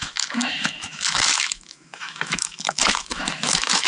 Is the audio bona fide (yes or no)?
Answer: no